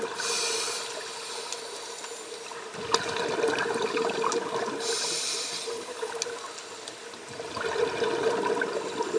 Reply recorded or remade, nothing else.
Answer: recorded